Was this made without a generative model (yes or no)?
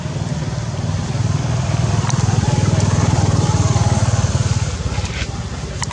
no